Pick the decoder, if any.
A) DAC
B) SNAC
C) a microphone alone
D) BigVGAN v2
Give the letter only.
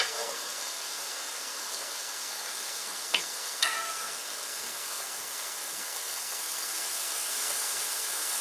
B